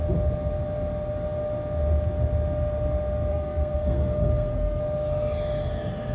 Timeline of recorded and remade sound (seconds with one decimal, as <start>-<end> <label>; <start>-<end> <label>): 0.0-3.3 recorded; 3.3-4.8 remade; 4.8-6.1 recorded